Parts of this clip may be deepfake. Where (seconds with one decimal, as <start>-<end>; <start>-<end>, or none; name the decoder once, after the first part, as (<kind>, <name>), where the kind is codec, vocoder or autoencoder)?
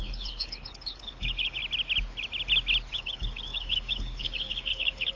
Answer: 0.0-1.6 (codec, HILCodec); 2.9-5.2